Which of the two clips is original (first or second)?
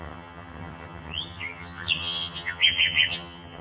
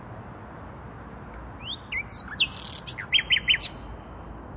second